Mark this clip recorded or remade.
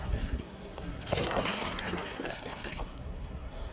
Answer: remade